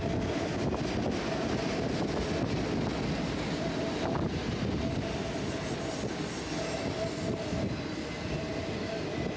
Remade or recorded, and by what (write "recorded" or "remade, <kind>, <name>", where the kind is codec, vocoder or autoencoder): recorded